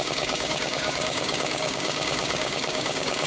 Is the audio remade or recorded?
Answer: remade